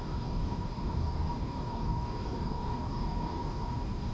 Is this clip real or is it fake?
fake